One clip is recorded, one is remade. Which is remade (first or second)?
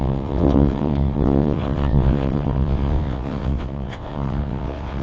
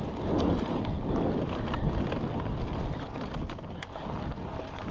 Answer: first